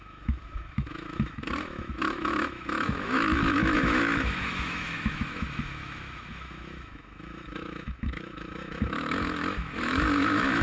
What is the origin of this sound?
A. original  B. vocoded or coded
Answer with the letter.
B